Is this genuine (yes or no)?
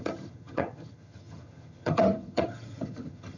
no